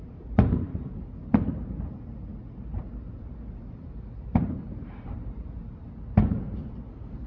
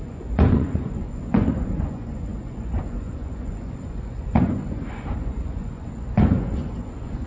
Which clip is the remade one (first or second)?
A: second